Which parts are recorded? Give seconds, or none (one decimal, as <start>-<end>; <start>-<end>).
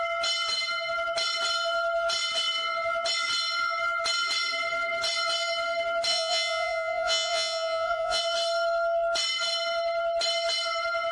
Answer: 0.0-6.1; 8.2-11.1